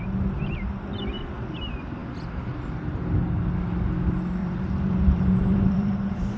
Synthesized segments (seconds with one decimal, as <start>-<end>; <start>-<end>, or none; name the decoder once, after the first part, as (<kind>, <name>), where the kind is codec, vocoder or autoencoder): 4.4-6.4 (vocoder, BigVGAN v2)